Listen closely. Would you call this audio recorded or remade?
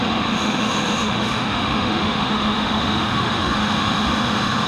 remade